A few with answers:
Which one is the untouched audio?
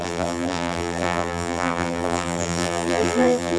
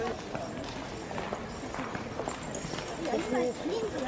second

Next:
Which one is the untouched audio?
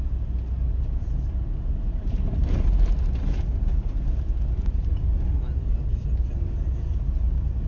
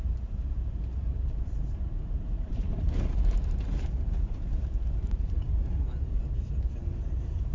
first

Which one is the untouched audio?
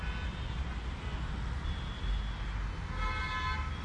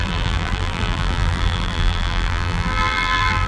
first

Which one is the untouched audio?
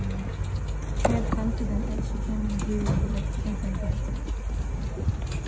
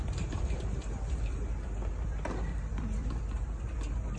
first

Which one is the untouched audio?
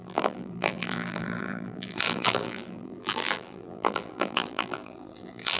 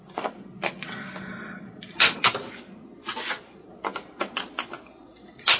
second